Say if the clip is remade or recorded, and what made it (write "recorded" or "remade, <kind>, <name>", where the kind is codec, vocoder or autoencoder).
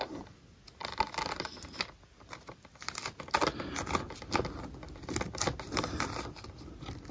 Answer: recorded